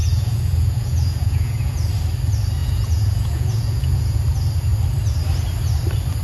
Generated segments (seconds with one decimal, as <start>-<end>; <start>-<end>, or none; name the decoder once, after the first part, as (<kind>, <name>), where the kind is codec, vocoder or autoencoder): 0.0-1.9 (vocoder, Vocos); 2.6-4.2